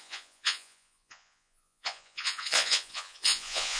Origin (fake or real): fake